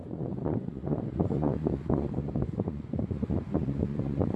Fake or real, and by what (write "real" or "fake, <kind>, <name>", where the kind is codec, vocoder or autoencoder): fake, vocoder, Vocos